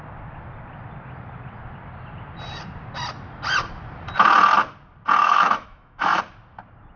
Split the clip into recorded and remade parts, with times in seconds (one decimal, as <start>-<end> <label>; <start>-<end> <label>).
0.0-5.2 recorded; 5.2-6.2 remade; 6.2-7.0 recorded